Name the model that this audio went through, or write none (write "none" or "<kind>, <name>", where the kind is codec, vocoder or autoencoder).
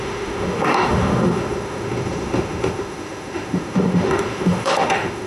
autoencoder, DAC-VAE